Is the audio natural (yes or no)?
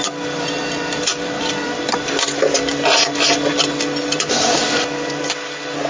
yes